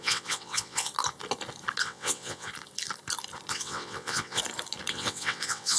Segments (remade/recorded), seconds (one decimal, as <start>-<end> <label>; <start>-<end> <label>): 0.0-0.9 remade; 0.9-1.8 recorded; 1.8-2.5 remade; 2.5-3.5 recorded; 3.5-4.4 remade; 4.4-4.9 recorded; 4.9-5.8 remade